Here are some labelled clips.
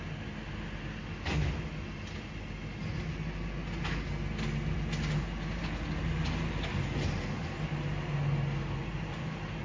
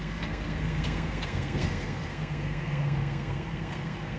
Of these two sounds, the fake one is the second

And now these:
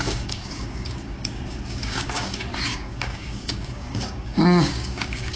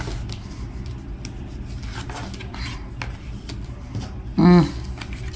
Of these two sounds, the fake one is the first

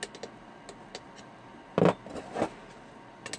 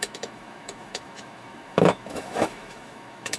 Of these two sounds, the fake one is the second